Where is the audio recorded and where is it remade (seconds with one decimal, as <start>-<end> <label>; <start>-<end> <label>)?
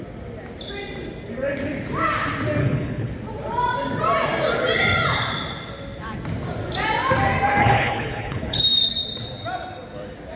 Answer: 0.0-2.6 recorded; 2.6-3.1 remade; 3.1-7.6 recorded; 7.6-8.6 remade; 8.6-10.4 recorded